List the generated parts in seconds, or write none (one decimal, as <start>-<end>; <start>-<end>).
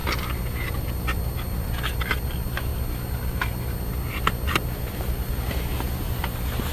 none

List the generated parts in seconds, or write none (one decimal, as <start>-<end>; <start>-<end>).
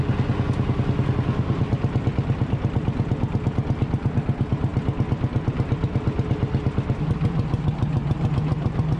none